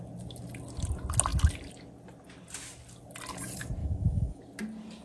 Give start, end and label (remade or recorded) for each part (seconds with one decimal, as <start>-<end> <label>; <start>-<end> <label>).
0.0-3.8 recorded; 3.8-4.4 remade; 4.4-5.0 recorded